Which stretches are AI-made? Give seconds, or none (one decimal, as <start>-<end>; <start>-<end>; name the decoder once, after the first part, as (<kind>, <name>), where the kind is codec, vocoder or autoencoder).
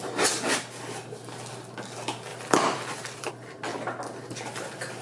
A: 2.3-3.3 (vocoder, BigVGAN v2)